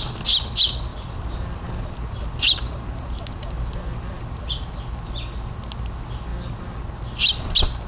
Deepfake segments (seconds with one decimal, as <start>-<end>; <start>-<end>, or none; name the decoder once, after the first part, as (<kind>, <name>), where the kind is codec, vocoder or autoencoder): none